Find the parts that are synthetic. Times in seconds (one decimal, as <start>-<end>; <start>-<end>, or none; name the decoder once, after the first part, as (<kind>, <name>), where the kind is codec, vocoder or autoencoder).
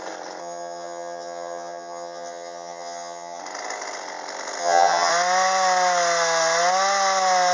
0.4-3.4 (vocoder, HiFi-GAN); 4.6-5.1